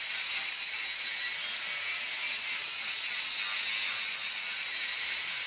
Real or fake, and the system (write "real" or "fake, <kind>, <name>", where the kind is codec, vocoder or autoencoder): real